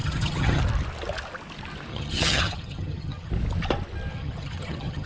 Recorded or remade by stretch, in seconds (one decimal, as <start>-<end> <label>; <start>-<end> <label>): 0.0-0.6 remade; 0.6-1.9 recorded; 1.9-3.3 remade; 3.3-4.1 recorded; 4.1-5.1 remade

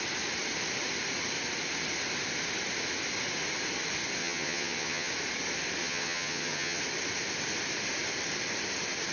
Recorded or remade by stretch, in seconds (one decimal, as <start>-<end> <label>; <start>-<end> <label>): 0.0-4.2 recorded; 4.2-5.1 remade; 5.1-5.8 recorded; 5.8-6.8 remade; 6.8-9.1 recorded

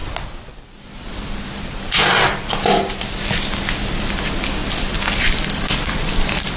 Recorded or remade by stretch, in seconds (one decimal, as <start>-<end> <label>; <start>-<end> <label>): 0.0-6.6 recorded

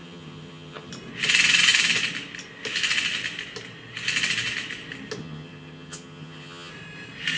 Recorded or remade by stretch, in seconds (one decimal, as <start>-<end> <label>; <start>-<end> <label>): 0.0-0.9 remade; 0.9-5.2 recorded; 5.2-6.7 remade; 6.7-7.4 recorded

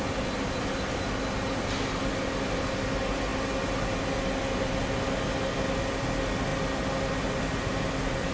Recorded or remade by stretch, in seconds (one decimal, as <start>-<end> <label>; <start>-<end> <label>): 0.0-8.3 recorded